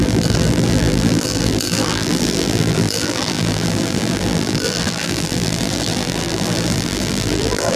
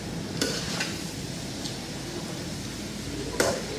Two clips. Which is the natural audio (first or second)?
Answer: second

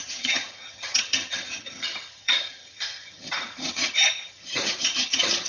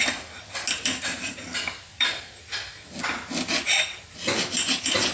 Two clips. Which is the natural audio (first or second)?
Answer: second